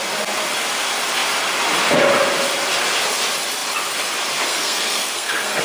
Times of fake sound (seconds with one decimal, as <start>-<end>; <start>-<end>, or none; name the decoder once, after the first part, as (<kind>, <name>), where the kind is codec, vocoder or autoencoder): 4.5-5.6 (codec, SNAC)